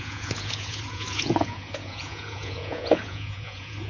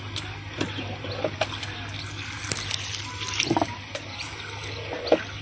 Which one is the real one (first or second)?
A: second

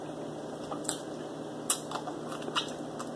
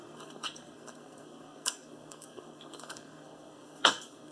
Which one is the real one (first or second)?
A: first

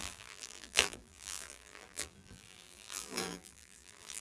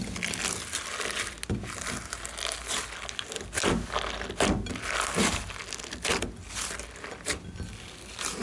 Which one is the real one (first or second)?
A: second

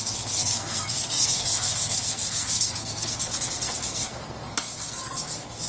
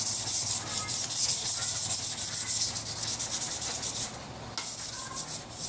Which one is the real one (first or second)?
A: second